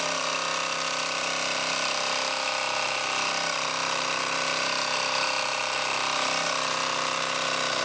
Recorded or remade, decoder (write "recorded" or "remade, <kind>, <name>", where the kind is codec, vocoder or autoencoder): recorded